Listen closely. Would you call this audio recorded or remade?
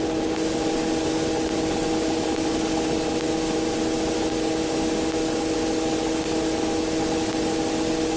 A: recorded